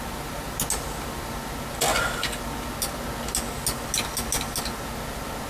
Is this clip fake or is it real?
real